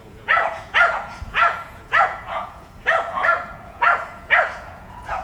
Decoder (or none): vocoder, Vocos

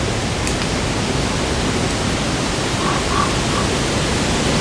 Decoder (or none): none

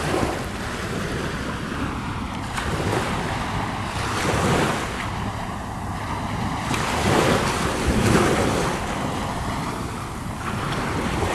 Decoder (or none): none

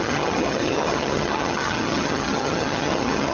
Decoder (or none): vocoder, HiFi-GAN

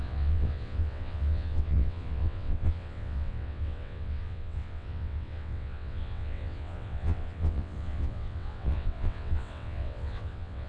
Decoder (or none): vocoder, WaveNeXt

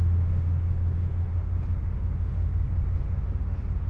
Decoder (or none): autoencoder, DAC-VAE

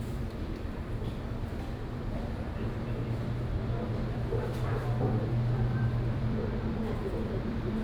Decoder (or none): vocoder, BigVGAN v2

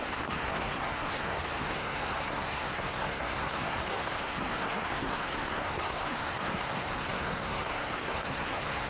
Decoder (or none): codec, SNAC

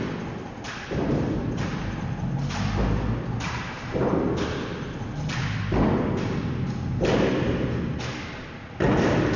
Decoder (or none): none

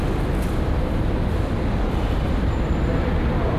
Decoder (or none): none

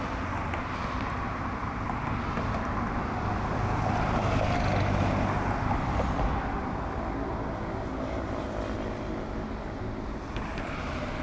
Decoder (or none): none